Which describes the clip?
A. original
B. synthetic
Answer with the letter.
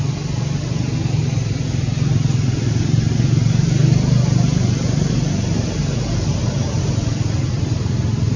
A